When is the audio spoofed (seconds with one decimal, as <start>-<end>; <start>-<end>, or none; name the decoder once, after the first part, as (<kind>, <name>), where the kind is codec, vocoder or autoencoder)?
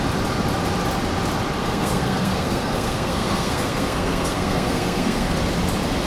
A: 1.6-5.3 (codec, SNAC)